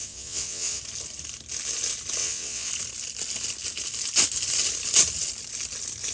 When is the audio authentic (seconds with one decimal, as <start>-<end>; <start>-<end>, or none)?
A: 0.8-2.2; 2.7-6.1